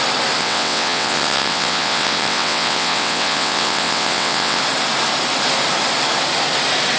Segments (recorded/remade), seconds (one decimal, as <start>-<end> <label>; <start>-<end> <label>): 0.0-0.4 recorded; 0.4-4.6 remade; 4.6-7.0 recorded

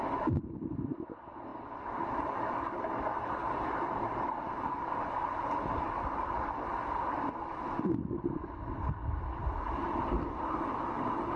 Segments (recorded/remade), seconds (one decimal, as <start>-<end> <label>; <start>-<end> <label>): 0.0-11.4 recorded

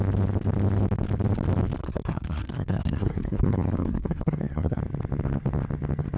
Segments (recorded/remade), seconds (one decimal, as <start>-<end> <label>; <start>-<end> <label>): 0.0-1.8 recorded; 1.8-4.8 remade; 4.8-6.2 recorded

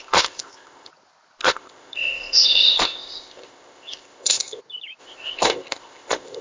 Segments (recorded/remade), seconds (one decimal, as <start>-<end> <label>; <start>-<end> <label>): 0.0-0.9 remade; 0.9-1.4 recorded; 1.4-4.6 remade; 4.6-5.0 recorded; 5.0-6.4 remade

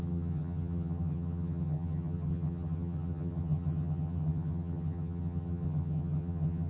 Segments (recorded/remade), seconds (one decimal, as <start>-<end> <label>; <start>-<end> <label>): 0.0-6.7 remade